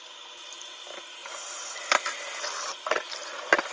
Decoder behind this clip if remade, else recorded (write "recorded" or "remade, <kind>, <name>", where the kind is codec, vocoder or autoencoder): recorded